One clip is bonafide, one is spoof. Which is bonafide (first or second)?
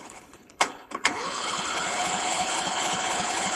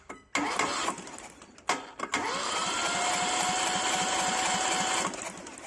second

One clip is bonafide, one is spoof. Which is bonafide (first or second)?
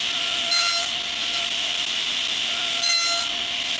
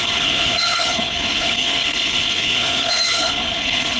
first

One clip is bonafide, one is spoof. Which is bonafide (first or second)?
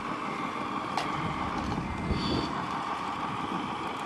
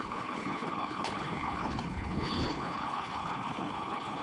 first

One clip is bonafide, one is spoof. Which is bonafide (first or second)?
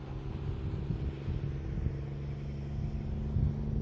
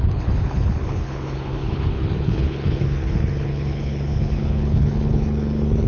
first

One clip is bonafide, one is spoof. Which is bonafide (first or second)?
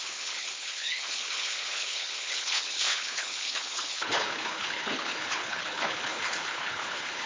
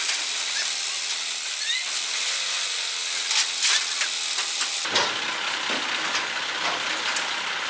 second